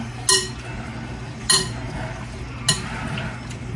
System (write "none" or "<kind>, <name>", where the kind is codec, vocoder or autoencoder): none